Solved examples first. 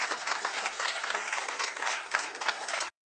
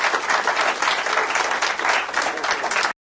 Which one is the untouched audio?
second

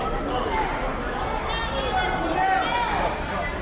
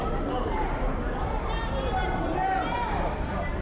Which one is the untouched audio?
first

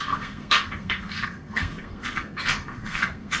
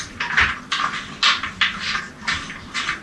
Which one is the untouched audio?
second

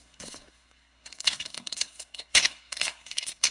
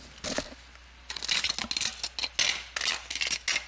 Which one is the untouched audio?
second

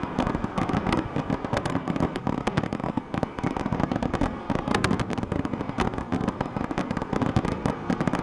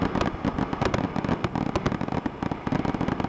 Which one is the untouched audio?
second